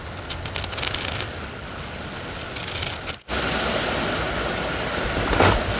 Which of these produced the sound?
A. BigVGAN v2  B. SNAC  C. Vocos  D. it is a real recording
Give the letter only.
D